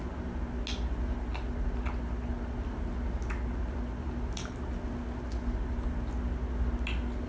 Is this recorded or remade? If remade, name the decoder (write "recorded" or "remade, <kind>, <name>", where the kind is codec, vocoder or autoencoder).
recorded